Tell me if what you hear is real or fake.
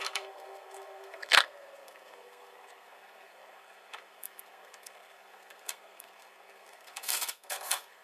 fake